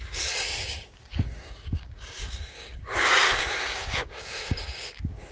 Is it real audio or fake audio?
fake